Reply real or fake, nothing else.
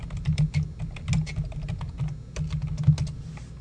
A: real